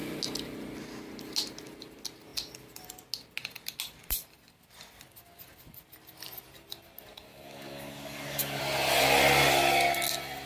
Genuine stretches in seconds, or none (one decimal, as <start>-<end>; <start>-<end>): 0.0-7.3; 8.6-10.5